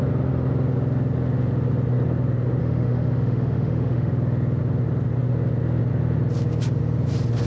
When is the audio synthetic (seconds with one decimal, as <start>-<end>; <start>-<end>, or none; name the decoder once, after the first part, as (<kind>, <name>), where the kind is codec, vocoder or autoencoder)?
2.6-4.1 (autoencoder, DAC-VAE)